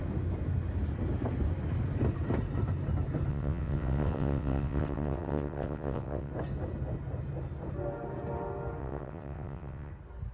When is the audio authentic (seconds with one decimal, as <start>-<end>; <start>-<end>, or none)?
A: 0.0-3.3; 6.3-8.8; 9.9-10.3